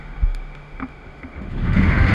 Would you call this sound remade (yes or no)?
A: yes